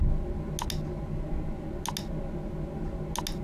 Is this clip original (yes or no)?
yes